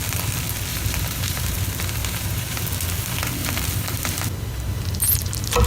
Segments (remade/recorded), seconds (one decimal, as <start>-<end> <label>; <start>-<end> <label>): 0.0-0.7 recorded; 0.7-1.6 remade; 1.6-2.0 recorded; 2.0-2.6 remade; 2.6-5.7 recorded